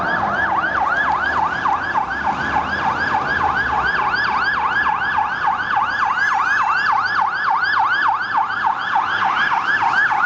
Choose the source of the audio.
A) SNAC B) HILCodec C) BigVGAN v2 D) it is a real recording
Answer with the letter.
D